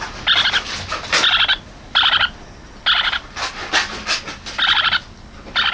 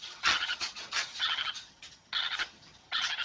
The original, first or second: first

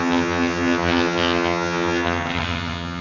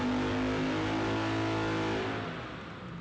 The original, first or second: second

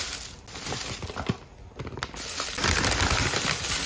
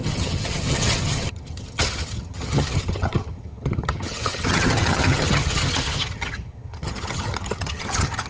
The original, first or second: first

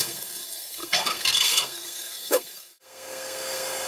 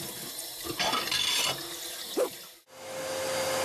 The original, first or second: second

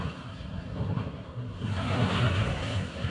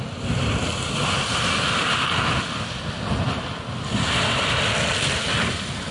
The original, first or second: second